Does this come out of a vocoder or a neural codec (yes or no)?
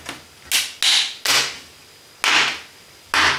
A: no